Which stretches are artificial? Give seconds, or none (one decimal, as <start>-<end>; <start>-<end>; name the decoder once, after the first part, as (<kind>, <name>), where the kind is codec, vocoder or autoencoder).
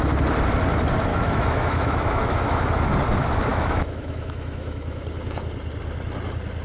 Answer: 1.1-2.7 (autoencoder, DAC-VAE); 3.5-5.0